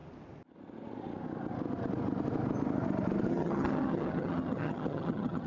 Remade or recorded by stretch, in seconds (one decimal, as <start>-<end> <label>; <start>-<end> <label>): 0.0-3.3 recorded; 3.3-5.5 remade